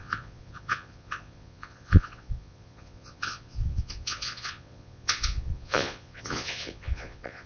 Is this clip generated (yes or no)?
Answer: yes